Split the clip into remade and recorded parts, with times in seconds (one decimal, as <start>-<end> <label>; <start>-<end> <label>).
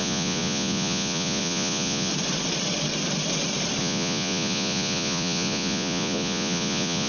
0.0-2.1 remade; 2.1-3.8 recorded; 3.8-7.1 remade